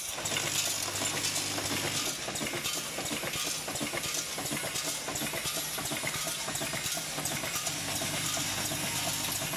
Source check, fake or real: real